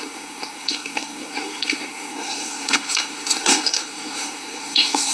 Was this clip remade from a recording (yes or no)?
yes